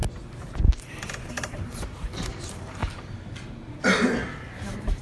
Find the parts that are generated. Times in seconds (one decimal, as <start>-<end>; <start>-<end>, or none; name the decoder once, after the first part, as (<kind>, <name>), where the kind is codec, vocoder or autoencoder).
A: 1.3-2.8 (vocoder, BigVGAN v2); 4.4-5.0